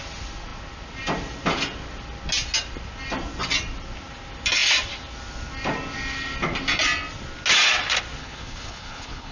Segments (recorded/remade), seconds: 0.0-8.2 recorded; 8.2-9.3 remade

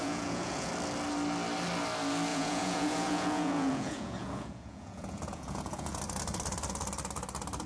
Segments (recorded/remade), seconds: 0.0-0.7 remade; 0.7-2.3 recorded; 2.3-6.0 remade; 6.0-7.7 recorded

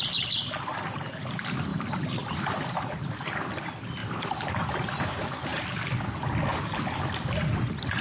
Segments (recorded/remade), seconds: 0.0-1.7 recorded; 1.7-2.4 remade; 2.4-4.0 recorded; 4.0-4.5 remade; 4.5-8.0 recorded